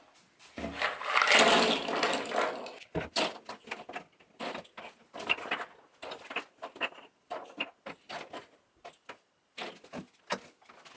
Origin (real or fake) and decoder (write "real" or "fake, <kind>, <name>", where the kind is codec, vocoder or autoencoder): real